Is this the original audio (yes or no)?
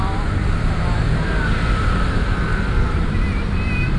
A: no